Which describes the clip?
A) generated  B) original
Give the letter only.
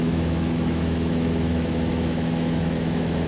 A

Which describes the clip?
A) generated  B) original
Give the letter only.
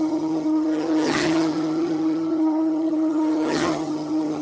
A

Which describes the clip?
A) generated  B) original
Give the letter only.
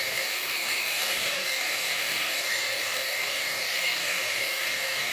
A